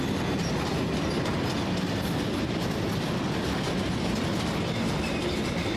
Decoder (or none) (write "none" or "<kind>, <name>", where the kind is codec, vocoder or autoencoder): none